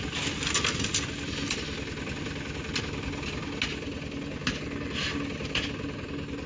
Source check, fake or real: real